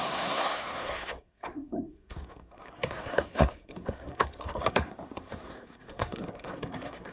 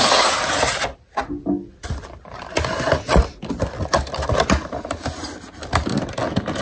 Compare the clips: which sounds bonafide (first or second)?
second